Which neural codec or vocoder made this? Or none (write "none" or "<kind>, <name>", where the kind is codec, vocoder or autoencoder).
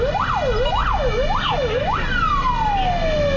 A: none